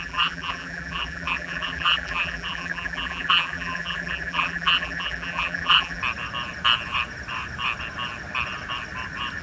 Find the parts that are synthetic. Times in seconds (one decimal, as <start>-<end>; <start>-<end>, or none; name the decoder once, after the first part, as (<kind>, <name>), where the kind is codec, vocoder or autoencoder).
0.0-6.0 (vocoder, BigVGAN v2)